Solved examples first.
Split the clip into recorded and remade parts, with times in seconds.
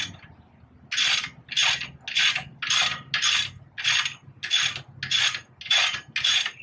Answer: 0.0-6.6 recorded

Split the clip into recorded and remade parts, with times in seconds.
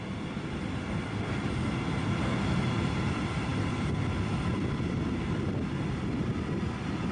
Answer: 0.0-7.1 recorded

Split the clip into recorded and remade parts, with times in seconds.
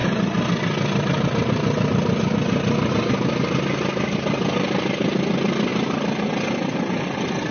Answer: 0.0-7.5 recorded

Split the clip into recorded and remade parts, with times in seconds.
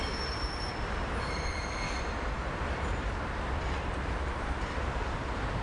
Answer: 0.0-0.7 recorded; 0.7-4.1 remade; 4.1-5.6 recorded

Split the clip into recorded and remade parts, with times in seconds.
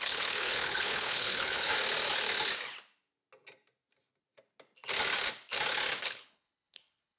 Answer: 0.0-1.7 remade; 1.7-6.0 recorded; 6.0-7.2 remade